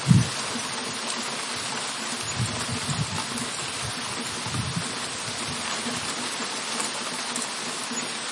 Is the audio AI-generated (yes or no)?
no